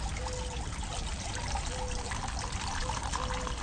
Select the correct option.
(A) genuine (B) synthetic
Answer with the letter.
A